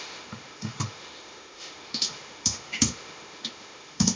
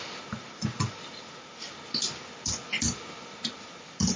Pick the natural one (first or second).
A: second